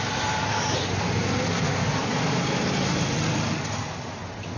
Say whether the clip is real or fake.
real